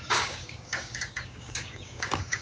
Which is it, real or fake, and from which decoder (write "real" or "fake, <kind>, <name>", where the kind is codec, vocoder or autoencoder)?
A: fake, codec, DAC